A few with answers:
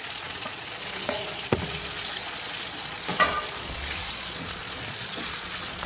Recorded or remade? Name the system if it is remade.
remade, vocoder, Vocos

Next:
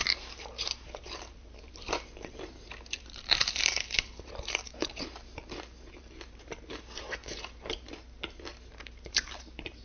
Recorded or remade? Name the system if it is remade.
remade, vocoder, BigVGAN v2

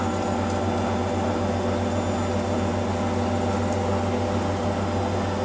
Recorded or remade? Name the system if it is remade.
recorded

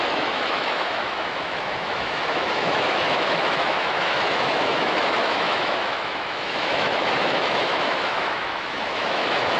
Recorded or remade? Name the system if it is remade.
remade, autoencoder, DAC-VAE